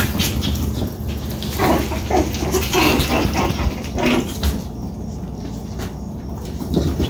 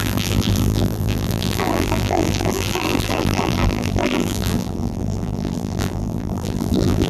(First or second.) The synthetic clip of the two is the second